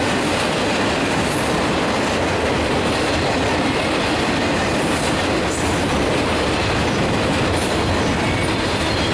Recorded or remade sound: recorded